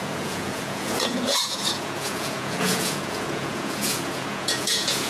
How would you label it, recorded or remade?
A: remade